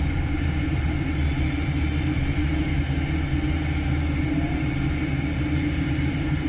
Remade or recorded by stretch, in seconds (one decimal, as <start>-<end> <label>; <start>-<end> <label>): 0.0-2.7 remade; 2.7-4.2 recorded; 4.2-6.5 remade